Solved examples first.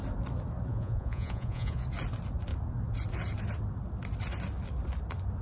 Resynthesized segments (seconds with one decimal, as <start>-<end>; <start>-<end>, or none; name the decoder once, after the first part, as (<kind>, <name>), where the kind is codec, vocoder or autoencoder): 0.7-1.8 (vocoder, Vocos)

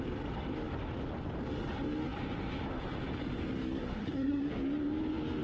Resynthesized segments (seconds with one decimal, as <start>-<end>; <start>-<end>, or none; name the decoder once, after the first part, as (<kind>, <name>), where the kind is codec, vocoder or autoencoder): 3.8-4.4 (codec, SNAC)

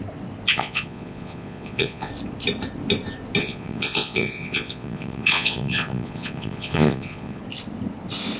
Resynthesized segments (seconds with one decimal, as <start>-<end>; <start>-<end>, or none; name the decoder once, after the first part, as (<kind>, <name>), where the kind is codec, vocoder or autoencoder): 0.5-2.1 (vocoder, Vocos); 3.4-7.4

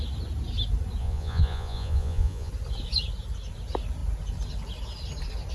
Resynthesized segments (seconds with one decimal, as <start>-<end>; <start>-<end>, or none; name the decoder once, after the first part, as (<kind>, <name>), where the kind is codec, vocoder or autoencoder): 1.0-2.5 (vocoder, Vocos)

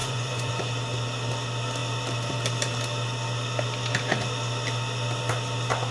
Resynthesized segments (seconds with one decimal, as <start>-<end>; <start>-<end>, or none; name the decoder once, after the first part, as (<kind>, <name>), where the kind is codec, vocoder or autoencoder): 0.0-0.5 (vocoder, Vocos)

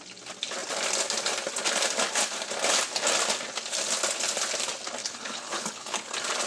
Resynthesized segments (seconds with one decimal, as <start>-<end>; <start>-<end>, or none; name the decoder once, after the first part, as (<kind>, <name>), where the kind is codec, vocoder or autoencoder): 5.0-6.1 (codec, HILCodec)